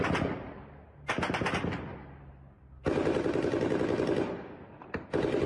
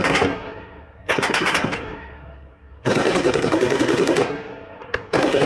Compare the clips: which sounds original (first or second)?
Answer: first